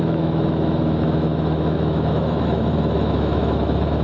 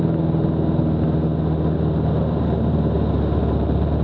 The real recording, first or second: second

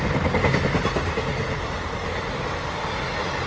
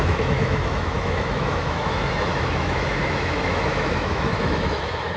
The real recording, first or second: first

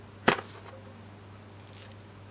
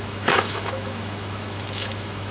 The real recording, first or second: first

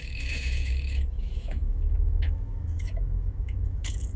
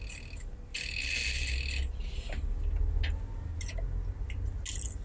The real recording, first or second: second